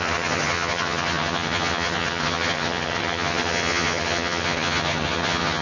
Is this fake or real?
fake